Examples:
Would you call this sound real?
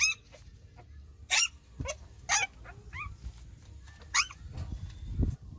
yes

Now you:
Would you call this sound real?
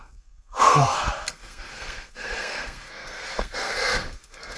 no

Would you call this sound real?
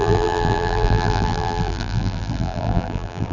no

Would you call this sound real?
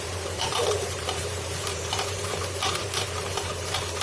no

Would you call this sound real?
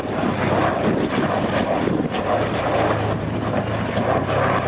yes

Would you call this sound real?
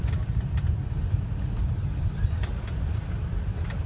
yes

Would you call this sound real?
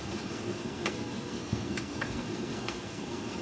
no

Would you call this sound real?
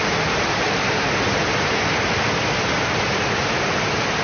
yes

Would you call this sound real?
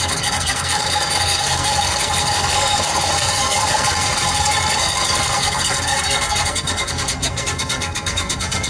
no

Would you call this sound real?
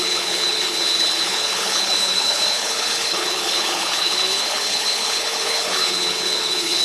no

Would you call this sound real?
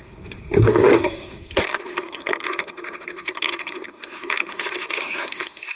no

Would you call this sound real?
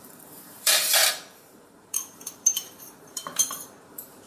no